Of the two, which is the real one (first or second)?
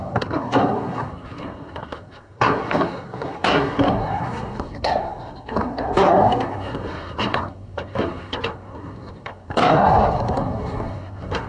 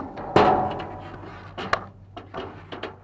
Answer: second